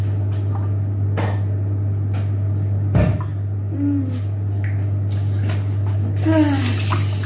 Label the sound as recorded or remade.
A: recorded